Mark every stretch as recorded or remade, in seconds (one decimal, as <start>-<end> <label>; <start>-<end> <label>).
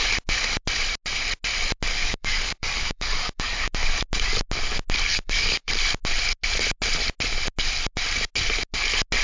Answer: 0.0-1.9 recorded; 1.9-3.7 remade; 3.7-5.1 recorded; 5.1-5.7 remade; 5.7-9.2 recorded